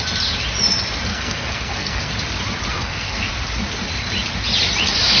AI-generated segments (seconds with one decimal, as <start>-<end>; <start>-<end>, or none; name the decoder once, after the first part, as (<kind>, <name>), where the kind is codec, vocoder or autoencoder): 1.1-2.1 (codec, SNAC); 2.7-3.3